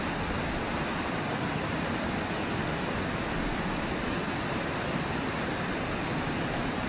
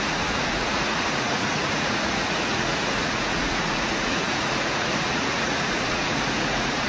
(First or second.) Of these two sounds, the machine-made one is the second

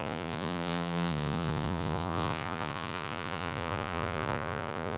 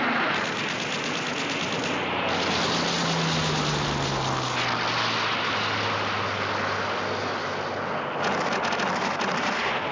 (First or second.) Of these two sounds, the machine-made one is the first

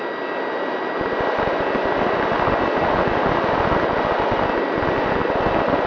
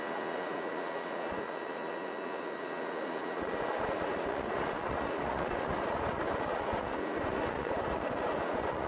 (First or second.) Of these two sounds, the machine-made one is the second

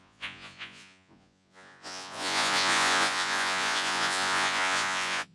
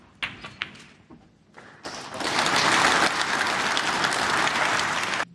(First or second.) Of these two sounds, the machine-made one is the first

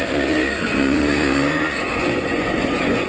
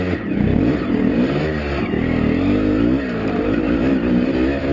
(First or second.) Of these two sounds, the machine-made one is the first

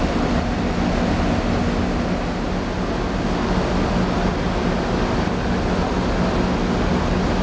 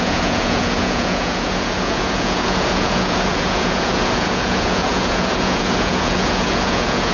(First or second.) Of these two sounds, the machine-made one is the second